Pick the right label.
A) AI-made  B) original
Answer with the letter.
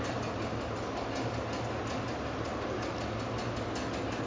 B